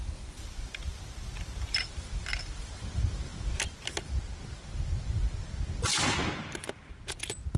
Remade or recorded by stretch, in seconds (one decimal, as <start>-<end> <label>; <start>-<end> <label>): 0.0-3.3 remade; 3.3-4.7 recorded; 4.7-7.6 remade